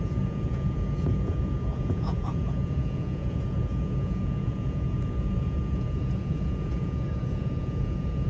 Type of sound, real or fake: fake